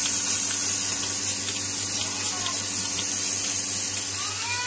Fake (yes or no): no